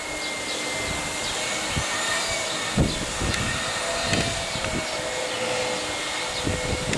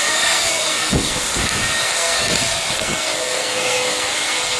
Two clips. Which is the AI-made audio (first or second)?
second